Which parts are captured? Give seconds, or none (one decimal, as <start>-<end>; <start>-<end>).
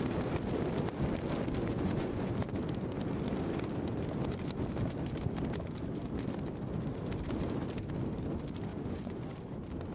0.0-1.6; 2.3-8.7; 9.3-9.9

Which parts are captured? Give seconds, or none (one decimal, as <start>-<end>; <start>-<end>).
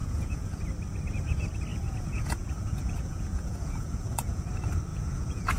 0.6-1.7; 4.5-4.9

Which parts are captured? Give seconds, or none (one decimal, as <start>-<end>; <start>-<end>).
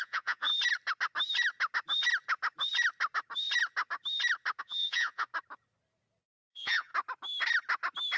0.5-4.6; 5.3-6.5; 6.9-8.2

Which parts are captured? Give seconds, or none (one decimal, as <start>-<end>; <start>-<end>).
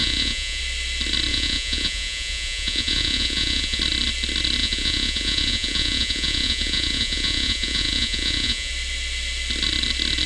0.6-1.3; 3.8-4.6; 8.7-10.3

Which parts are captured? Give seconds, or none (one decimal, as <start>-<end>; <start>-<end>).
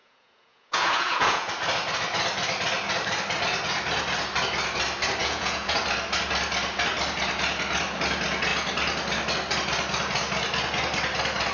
1.5-5.2; 5.8-11.5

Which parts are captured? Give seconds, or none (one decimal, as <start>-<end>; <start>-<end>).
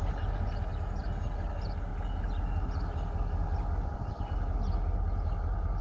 0.0-5.8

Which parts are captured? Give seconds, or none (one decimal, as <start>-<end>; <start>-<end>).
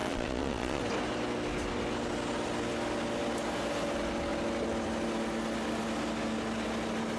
0.8-7.2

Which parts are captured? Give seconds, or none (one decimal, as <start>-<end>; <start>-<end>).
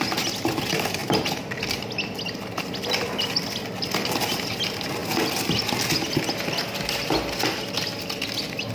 0.0-8.7